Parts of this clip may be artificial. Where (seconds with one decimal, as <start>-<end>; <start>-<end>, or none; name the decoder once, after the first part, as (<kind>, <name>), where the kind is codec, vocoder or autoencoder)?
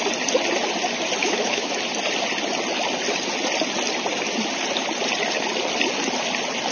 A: 1.2-1.7 (autoencoder, DAC-VAE)